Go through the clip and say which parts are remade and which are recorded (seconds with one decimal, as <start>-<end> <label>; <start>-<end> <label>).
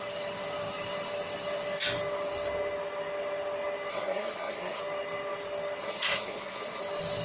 0.0-3.9 recorded; 3.9-4.8 remade; 4.8-5.8 recorded; 5.8-6.8 remade; 6.8-7.2 recorded